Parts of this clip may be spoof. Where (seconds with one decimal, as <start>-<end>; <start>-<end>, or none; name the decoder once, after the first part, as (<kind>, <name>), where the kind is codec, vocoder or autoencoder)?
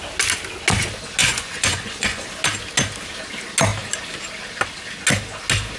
1.2-2.3 (vocoder, Vocos)